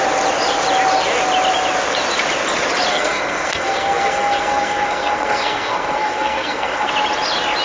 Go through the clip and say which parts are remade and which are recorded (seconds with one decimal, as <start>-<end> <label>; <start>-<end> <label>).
0.0-2.9 recorded; 2.9-6.9 remade; 6.9-7.6 recorded

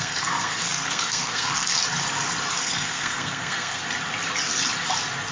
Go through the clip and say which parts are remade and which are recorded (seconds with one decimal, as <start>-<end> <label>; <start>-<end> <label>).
0.0-1.8 remade; 1.8-2.5 recorded; 2.5-3.8 remade; 3.8-5.3 recorded

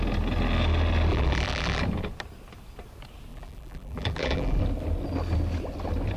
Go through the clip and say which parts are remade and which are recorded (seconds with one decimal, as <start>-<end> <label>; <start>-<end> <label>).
0.0-1.1 recorded; 1.1-1.8 remade; 1.8-3.3 recorded; 3.3-4.6 remade; 4.6-6.2 recorded

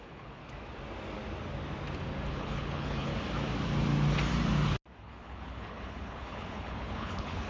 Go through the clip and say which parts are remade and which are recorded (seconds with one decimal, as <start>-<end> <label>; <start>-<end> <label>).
0.0-0.4 remade; 0.4-2.3 recorded; 2.3-3.1 remade; 3.1-5.0 recorded; 5.0-7.5 remade

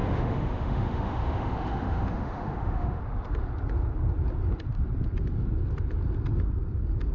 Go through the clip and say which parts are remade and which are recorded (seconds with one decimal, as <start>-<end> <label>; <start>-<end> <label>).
0.0-3.0 remade; 3.0-7.1 recorded

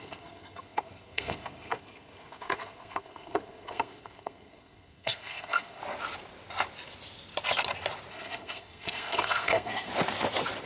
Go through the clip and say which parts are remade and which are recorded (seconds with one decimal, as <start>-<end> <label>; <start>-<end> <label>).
0.0-5.8 remade; 5.8-8.1 recorded; 8.1-9.9 remade; 9.9-10.7 recorded

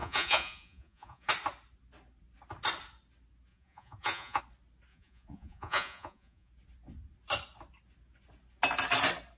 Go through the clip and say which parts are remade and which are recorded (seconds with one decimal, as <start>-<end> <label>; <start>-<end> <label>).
0.0-1.3 remade; 1.3-3.5 recorded; 3.5-4.4 remade; 4.4-4.9 recorded; 4.9-6.5 remade; 6.5-9.4 recorded